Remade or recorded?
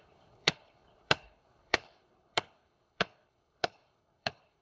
remade